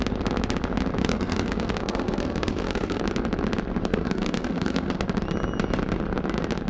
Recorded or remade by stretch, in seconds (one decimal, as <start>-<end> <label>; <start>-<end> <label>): 0.0-1.0 recorded; 1.0-3.0 remade; 3.0-3.8 recorded; 3.8-5.0 remade; 5.0-6.7 recorded